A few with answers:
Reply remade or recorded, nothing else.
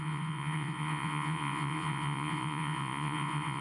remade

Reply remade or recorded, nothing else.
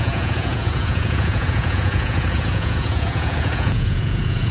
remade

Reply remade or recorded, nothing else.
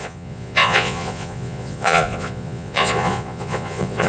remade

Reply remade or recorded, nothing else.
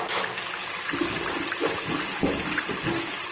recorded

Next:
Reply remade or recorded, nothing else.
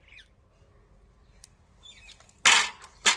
recorded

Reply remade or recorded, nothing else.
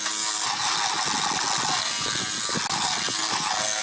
recorded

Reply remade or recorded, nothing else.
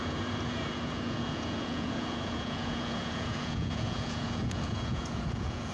remade